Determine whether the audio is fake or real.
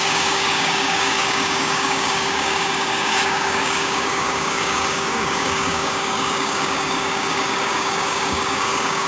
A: fake